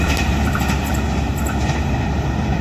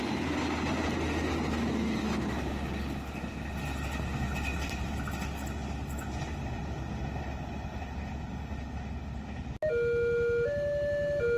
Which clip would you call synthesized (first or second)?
first